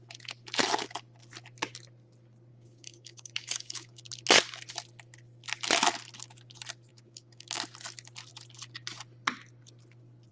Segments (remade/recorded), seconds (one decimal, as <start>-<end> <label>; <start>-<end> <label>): 0.0-2.5 recorded; 2.5-4.1 remade; 4.1-6.9 recorded; 6.9-7.6 remade; 7.6-10.3 recorded